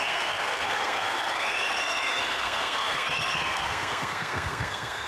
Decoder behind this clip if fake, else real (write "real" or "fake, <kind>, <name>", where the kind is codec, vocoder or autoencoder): fake, codec, SNAC